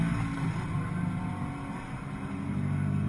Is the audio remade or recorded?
recorded